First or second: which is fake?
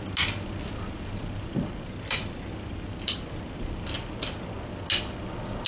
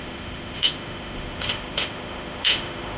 second